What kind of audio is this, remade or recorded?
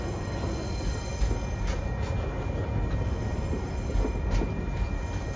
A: recorded